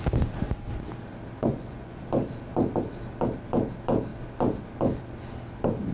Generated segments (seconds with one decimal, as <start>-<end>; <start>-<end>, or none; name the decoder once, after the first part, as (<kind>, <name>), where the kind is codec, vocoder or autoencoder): 1.4-2.0 (vocoder, Vocos)